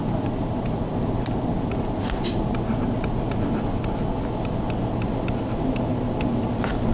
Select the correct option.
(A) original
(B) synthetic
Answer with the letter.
A